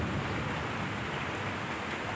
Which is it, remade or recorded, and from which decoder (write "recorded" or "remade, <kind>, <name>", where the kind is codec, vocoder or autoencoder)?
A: recorded